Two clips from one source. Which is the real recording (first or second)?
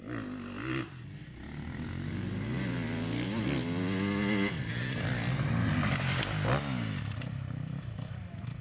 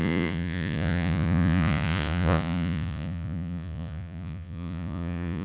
first